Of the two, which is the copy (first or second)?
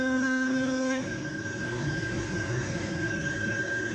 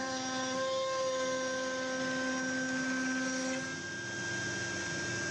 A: first